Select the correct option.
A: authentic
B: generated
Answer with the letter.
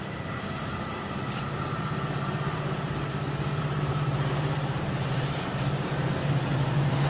B